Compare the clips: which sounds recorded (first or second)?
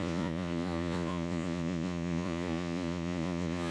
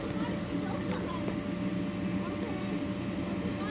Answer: second